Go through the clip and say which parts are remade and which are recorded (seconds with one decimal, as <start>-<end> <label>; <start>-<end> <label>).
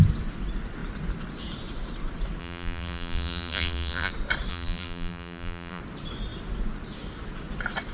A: 0.0-2.4 recorded; 2.4-4.1 remade; 4.1-4.5 recorded; 4.5-5.8 remade; 5.8-7.9 recorded